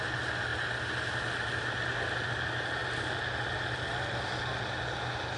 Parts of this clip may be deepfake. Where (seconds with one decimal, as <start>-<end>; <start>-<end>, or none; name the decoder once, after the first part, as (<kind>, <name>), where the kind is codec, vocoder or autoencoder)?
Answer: none